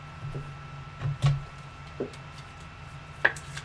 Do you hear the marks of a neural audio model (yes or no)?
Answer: no